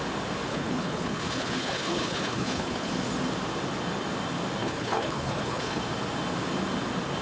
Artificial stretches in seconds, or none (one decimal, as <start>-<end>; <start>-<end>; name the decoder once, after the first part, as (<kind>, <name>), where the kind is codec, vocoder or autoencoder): 0.5-2.9 (codec, HILCodec); 4.6-5.8